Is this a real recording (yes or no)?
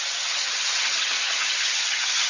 no